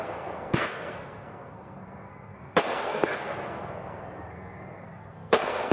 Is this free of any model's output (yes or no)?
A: no